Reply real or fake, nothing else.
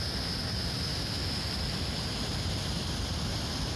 real